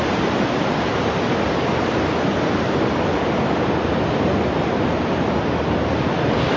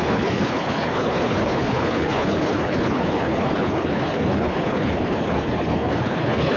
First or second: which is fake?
second